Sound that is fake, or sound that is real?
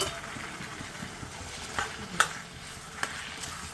fake